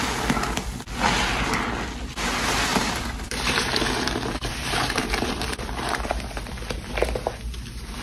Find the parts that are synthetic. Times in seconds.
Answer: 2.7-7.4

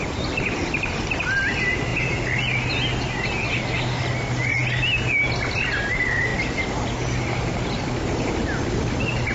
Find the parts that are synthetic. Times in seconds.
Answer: 0.0-1.9; 4.0-4.6; 5.3-6.3; 7.4-9.3

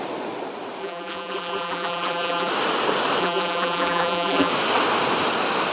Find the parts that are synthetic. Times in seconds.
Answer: 0.8-2.5; 3.2-4.5

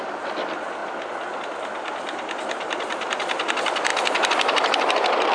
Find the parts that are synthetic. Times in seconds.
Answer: 0.0-0.8; 1.4-3.9

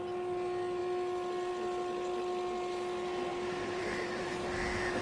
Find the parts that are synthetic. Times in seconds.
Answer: 3.3-4.3

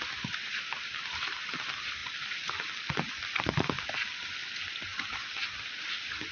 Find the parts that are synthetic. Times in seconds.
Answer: 2.0-4.5

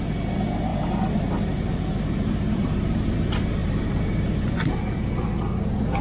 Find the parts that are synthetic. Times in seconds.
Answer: 1.9-3.1; 3.6-5.1

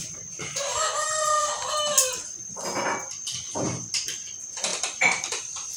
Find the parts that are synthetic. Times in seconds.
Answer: 0.0-0.7